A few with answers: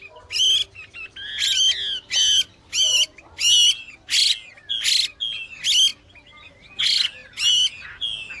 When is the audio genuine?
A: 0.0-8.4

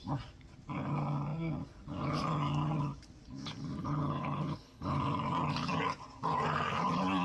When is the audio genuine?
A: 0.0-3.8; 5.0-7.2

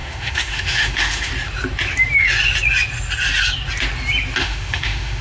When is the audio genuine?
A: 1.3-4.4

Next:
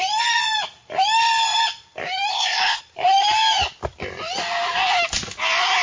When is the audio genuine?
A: 0.0-2.3; 2.8-5.8

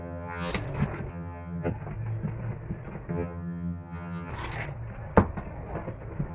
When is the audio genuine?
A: 0.5-1.1; 1.7-3.1; 4.3-6.3

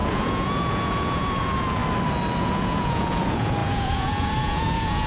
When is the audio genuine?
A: 1.8-2.4

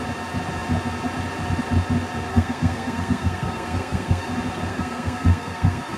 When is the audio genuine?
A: 0.0-2.3; 4.3-4.7